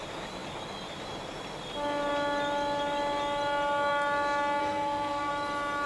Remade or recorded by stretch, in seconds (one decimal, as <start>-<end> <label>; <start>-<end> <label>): 0.0-4.6 recorded; 4.6-5.3 remade; 5.3-5.9 recorded